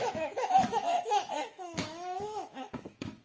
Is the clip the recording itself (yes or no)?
no